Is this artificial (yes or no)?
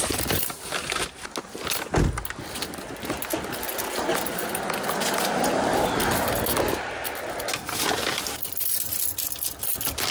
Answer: no